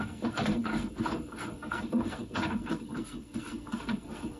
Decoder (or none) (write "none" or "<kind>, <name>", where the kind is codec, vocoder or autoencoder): codec, SNAC